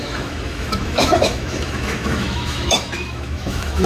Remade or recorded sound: remade